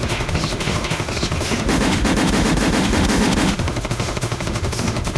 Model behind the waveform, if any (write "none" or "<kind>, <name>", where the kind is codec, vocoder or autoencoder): autoencoder, DAC-VAE